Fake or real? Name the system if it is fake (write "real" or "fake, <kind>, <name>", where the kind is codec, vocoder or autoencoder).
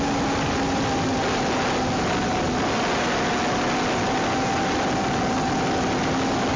real